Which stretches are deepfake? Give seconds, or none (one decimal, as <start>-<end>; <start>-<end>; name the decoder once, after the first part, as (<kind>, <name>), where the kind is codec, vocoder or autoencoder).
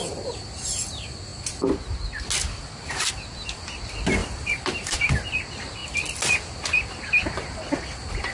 4.2-5.1 (vocoder, BigVGAN v2)